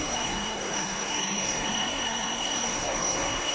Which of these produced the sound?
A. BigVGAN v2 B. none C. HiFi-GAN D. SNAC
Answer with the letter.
D